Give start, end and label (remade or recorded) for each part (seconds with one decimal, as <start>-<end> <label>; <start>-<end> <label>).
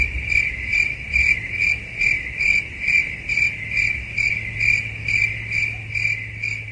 0.0-6.7 recorded